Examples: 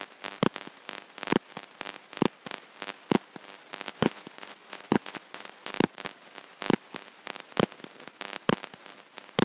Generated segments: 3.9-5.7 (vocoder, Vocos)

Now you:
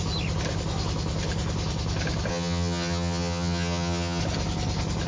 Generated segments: 2.3-4.2 (vocoder, HiFi-GAN)

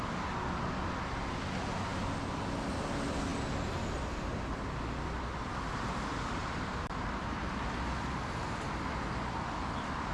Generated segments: 1.9-2.4 (vocoder, BigVGAN v2); 6.4-7.7

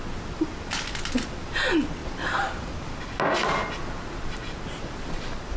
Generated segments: none

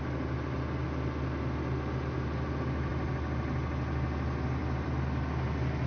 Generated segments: none